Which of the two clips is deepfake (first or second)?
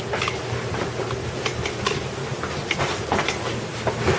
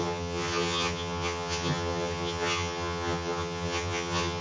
second